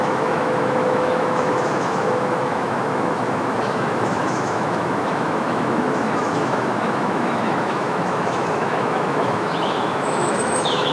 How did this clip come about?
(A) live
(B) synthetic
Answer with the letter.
B